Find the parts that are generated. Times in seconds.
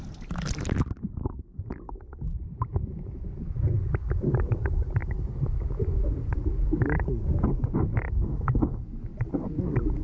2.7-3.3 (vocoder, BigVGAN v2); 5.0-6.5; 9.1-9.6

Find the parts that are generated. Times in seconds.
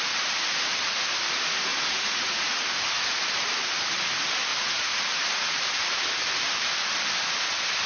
1.7-2.4 (vocoder, Vocos); 4.5-5.6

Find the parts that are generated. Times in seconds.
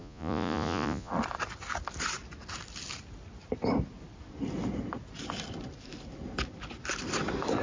0.0-1.1 (vocoder, Vocos)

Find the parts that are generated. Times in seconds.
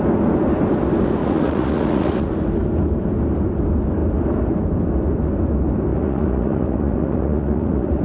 1.2-2.3 (vocoder, Vocos); 5.9-8.0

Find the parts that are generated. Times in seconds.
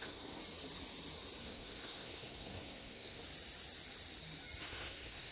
0.0-0.4 (codec, SNAC); 1.4-3.2; 4.6-5.3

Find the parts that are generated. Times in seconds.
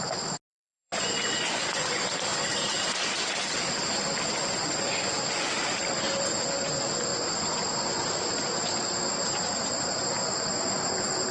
0.5-2.0 (vocoder, Vocos); 4.4-5.5; 7.1-8.0